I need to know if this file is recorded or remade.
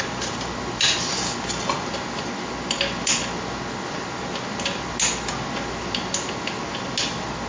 recorded